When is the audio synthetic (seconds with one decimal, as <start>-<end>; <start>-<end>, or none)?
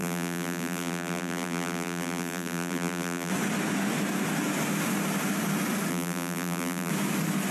0.0-3.3; 5.9-6.9